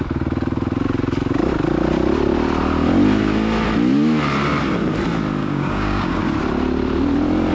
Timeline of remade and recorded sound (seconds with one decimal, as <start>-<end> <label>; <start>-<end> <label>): 0.0-5.4 recorded; 5.4-6.2 remade; 6.2-7.5 recorded